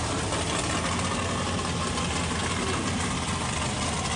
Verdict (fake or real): real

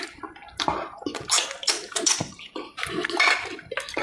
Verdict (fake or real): real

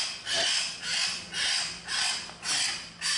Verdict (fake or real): real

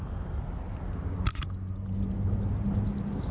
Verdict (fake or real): real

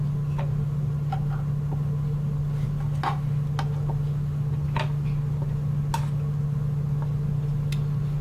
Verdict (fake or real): real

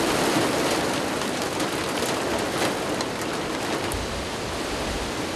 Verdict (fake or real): real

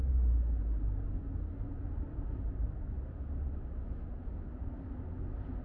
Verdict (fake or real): real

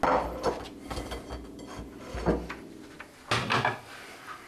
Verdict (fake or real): real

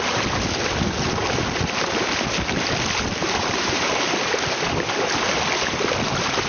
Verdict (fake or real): real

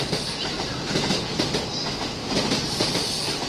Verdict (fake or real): real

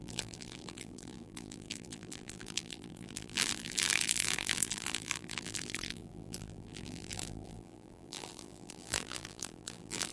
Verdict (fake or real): fake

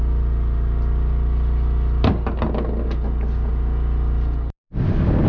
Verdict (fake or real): real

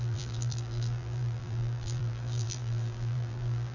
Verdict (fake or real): fake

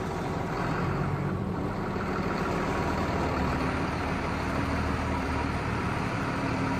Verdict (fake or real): fake